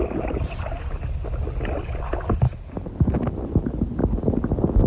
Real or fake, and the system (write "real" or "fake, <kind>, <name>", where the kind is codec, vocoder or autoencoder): real